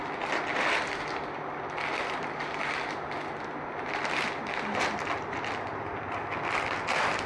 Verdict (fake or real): real